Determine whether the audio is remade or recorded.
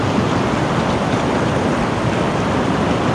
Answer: recorded